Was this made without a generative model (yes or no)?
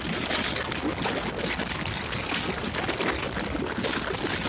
yes